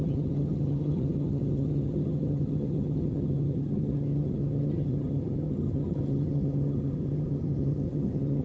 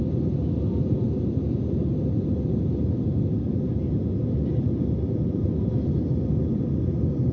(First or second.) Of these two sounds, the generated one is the first